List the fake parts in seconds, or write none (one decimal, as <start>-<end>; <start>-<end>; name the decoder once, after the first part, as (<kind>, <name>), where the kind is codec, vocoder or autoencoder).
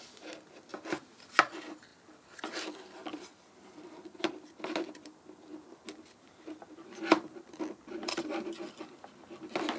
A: 0.7-1.5 (vocoder, BigVGAN v2); 1.9-4.3; 5.5-6.3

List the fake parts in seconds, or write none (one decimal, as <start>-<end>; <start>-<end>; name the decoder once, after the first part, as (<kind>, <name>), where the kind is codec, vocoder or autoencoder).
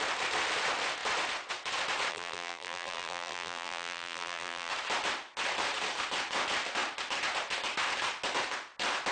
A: 2.1-4.7 (vocoder, BigVGAN v2)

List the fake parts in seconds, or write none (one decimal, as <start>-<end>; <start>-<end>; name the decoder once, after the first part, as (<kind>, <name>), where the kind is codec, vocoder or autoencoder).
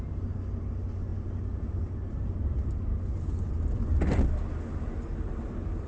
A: none